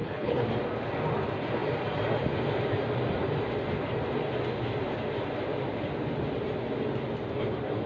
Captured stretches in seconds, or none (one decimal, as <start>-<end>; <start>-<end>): 0.5-7.9